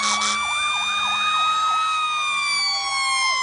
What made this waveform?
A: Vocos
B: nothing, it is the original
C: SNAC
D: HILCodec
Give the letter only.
B